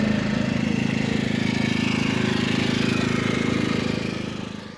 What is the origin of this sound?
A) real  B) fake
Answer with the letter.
A